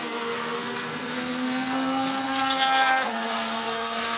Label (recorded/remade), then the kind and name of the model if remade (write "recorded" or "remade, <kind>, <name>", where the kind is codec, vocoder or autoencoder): remade, codec, SNAC